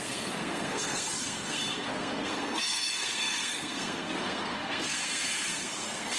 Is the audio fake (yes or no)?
yes